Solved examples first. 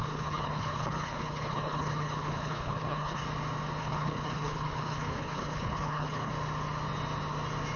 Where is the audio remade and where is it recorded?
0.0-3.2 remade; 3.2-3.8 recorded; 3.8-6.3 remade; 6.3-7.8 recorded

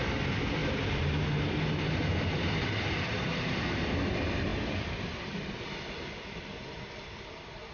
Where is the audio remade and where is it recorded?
0.0-0.6 remade; 0.6-2.0 recorded; 2.0-7.7 remade

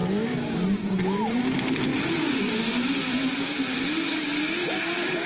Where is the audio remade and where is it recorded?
0.0-5.3 recorded